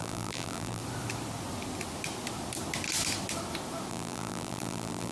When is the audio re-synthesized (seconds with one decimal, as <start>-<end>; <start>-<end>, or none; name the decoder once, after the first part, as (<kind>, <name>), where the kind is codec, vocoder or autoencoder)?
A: 0.0-0.8 (vocoder, BigVGAN v2); 3.9-5.1